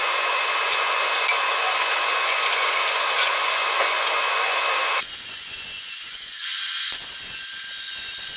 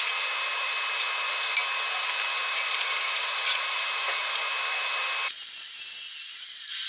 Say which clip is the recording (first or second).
second